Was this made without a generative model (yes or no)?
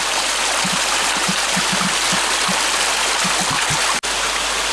yes